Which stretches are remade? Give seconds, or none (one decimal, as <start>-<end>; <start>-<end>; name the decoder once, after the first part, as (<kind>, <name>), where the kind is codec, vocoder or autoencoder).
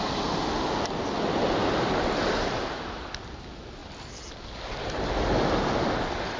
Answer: 3.8-4.3 (vocoder, BigVGAN v2)